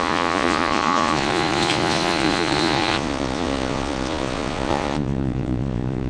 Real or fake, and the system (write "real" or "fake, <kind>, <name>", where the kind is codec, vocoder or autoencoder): fake, vocoder, Vocos